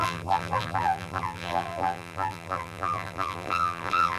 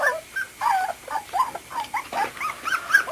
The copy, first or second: first